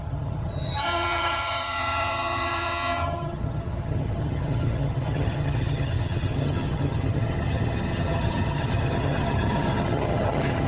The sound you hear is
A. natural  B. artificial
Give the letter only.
B